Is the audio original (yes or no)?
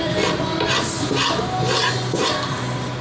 yes